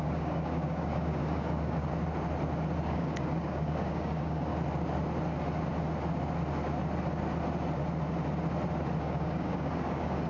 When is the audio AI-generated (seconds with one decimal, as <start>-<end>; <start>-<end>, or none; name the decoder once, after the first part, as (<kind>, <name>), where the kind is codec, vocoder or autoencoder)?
0.0-1.8 (codec, DAC); 2.8-4.5; 9.0-10.3